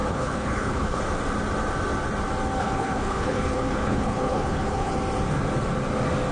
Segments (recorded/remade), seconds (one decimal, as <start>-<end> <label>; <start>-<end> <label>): 0.0-1.0 remade; 1.0-2.6 recorded; 2.6-4.9 remade; 4.9-6.3 recorded